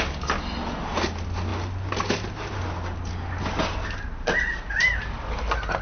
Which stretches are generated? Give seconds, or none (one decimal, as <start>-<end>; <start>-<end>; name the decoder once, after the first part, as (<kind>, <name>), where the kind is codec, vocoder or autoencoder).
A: none